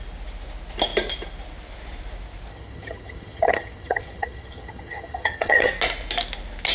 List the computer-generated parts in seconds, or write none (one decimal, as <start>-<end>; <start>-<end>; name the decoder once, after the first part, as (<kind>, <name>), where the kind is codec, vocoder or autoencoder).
2.5-5.7 (vocoder, HiFi-GAN)